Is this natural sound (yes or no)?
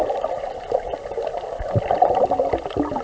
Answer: yes